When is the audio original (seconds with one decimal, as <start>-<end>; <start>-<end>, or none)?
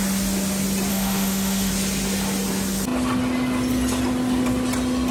0.0-0.9; 1.7-5.1